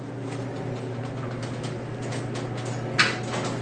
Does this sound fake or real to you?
real